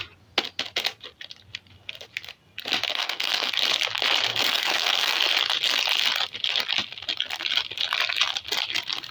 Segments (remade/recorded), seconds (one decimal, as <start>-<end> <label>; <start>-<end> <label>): 0.0-2.9 recorded; 2.9-3.5 remade; 3.5-4.3 recorded; 4.3-5.2 remade; 5.2-9.1 recorded